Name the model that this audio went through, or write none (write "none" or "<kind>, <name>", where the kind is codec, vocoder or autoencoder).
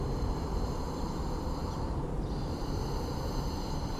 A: vocoder, BigVGAN v2